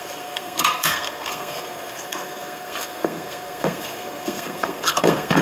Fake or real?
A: fake